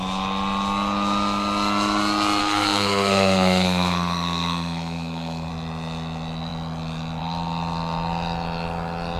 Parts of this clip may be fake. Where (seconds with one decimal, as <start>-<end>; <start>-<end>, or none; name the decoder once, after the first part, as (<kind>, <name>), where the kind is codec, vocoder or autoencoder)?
2.4-5.5 (codec, SNAC)